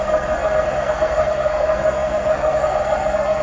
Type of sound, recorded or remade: remade